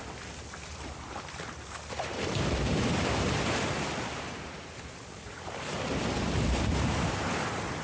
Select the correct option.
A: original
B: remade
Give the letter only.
B